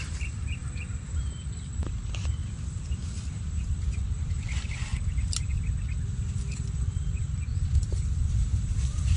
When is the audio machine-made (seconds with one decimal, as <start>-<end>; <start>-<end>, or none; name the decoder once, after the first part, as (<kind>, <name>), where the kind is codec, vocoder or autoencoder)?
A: 0.0-2.4 (vocoder, BigVGAN v2); 3.5-4.9; 6.2-9.2